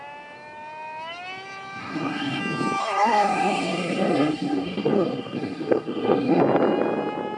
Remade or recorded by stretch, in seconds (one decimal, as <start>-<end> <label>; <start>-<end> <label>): 0.0-1.8 recorded; 1.8-2.4 remade; 2.4-2.8 recorded; 2.8-6.4 remade; 6.4-7.4 recorded